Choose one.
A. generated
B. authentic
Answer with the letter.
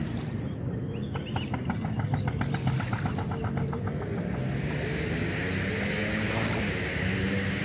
B